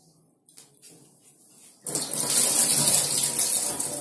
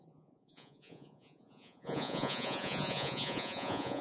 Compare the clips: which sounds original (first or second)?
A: first